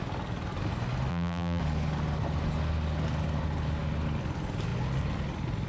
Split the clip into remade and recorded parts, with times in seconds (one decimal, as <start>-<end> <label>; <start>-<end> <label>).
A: 0.0-1.1 recorded; 1.1-1.6 remade; 1.6-5.7 recorded